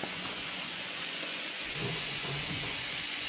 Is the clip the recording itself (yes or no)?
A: no